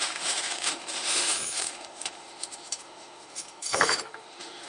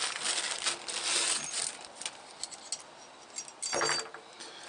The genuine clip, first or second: second